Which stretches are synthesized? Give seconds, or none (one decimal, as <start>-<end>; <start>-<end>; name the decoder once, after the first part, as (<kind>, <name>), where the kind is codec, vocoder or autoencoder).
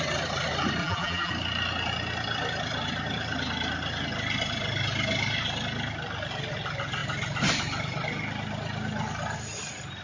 0.8-1.3 (vocoder, BigVGAN v2)